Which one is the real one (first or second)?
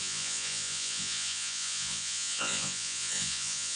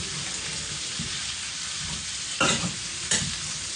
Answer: second